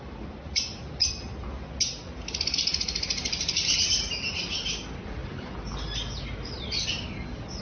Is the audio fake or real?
real